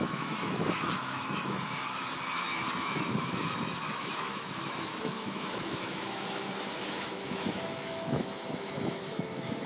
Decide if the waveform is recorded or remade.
remade